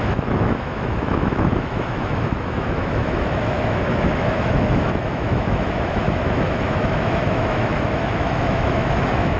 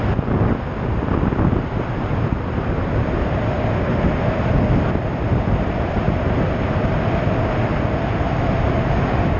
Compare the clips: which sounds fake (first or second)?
first